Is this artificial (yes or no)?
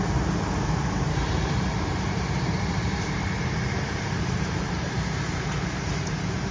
yes